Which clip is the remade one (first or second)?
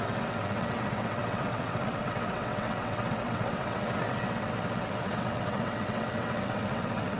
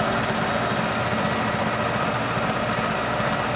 first